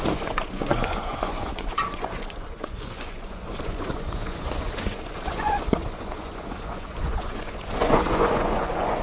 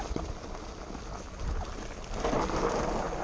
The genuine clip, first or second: second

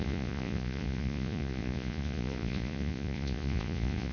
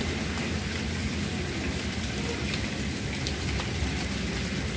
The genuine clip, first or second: second